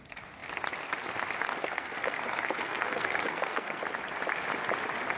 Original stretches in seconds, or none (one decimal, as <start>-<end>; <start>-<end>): 0.0-1.6; 3.8-5.2